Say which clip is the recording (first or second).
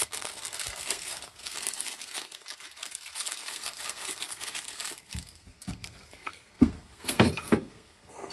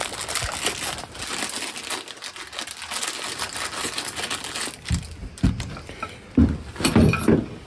second